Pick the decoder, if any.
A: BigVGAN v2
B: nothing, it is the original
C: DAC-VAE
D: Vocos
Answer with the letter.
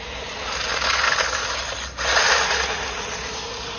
B